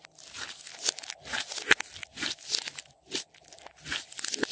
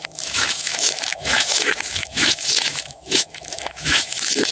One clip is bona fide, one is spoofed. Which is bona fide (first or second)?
first